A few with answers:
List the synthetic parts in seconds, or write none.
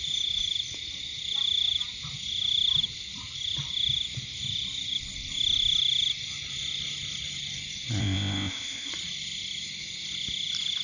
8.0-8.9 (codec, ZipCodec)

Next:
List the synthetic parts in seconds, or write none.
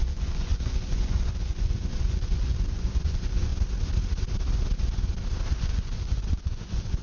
0.0-3.5 (vocoder, Vocos); 5.6-7.0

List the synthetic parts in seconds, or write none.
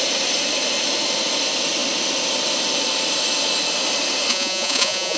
4.3-5.2 (vocoder, Vocos)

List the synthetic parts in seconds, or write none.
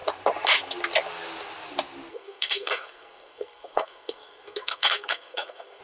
2.1-5.8 (codec, SNAC)